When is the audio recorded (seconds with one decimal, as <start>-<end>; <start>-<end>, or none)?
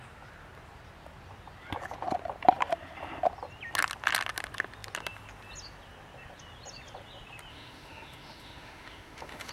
0.0-7.5